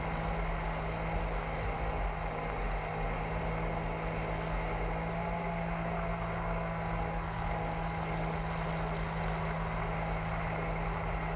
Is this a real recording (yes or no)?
yes